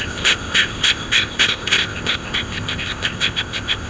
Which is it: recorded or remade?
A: remade